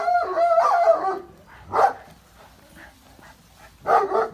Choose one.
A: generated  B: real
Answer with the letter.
B